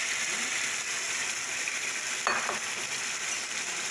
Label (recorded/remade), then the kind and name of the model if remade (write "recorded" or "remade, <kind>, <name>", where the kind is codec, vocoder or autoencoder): remade, vocoder, BigVGAN v2